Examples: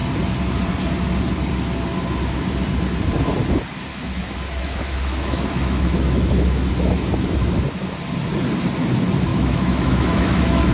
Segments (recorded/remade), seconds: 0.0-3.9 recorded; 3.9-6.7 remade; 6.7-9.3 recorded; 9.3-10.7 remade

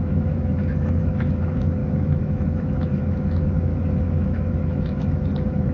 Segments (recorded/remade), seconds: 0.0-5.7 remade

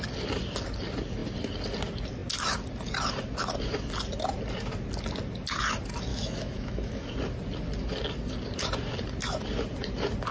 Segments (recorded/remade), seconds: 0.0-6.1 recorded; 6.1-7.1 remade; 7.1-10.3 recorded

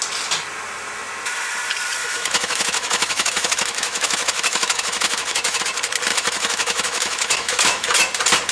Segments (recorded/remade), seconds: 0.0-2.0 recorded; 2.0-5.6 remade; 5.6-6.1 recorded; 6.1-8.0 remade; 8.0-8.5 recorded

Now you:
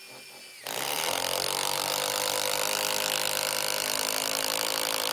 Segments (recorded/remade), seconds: 0.0-5.1 recorded